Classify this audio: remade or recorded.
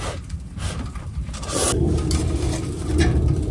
recorded